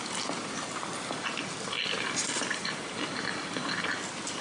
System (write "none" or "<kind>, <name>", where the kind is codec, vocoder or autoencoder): none